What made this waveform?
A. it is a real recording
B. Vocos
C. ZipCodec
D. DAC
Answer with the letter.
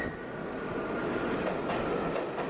A